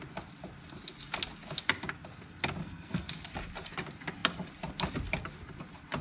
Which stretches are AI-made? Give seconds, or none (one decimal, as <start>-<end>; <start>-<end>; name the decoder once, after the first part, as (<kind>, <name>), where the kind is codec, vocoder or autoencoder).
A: 2.6-3.1 (codec, SNAC)